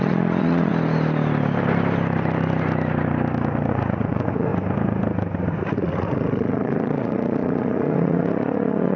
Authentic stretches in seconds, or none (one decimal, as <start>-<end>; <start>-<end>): 0.7-3.7; 4.5-5.6